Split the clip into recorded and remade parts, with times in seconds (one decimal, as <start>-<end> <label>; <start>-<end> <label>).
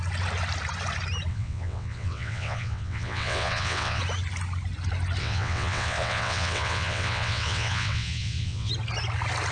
0.0-1.3 recorded; 1.3-4.0 remade; 4.0-5.2 recorded; 5.2-8.7 remade; 8.7-9.5 recorded